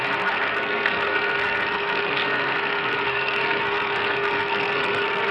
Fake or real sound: fake